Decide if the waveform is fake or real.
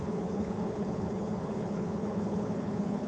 fake